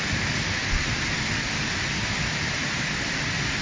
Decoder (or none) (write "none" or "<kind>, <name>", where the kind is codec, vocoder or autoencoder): none